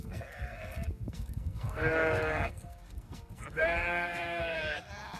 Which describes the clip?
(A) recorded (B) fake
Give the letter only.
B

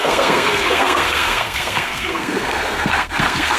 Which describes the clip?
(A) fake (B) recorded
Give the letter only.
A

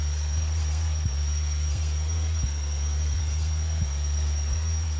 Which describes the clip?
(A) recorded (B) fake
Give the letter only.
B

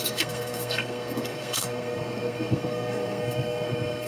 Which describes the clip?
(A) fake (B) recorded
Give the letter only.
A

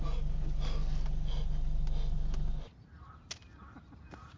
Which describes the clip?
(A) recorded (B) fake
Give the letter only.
A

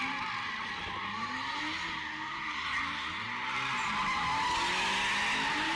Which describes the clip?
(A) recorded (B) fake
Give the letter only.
A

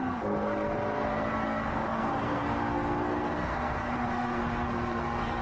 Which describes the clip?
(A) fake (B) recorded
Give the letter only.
A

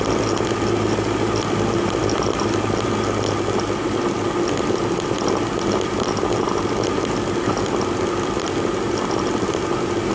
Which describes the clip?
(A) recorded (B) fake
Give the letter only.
A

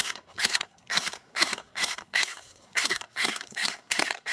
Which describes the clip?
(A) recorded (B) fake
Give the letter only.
B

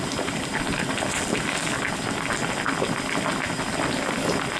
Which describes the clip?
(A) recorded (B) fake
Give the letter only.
A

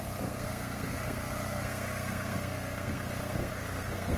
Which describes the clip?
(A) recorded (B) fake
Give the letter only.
B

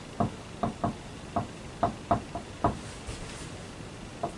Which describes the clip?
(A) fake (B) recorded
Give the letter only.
B